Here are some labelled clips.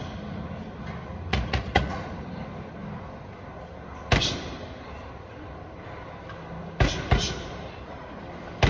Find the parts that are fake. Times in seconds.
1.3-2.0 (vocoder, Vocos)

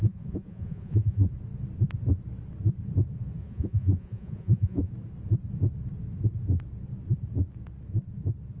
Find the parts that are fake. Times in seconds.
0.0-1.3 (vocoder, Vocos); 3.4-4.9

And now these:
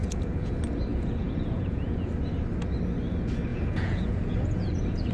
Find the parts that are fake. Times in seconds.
0.0-0.5 (vocoder, Vocos); 0.9-2.1; 3.5-5.1